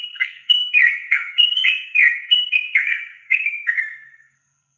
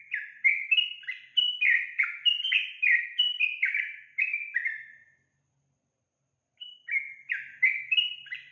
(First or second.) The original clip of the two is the second